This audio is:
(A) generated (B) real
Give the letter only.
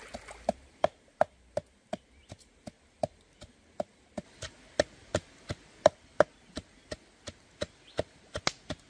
B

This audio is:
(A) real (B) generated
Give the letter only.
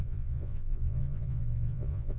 B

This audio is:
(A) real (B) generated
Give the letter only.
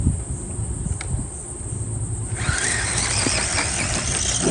A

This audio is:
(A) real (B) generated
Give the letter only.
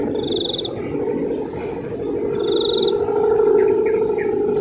A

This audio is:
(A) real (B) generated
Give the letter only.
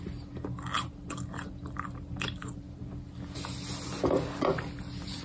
A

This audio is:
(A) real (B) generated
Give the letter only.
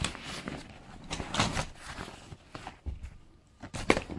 A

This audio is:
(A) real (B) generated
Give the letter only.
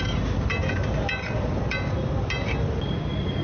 A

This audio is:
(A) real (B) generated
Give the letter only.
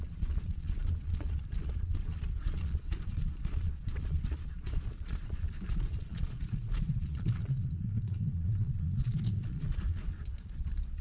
B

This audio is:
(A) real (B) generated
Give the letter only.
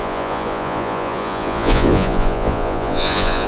B